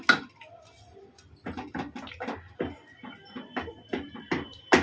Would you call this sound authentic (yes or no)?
yes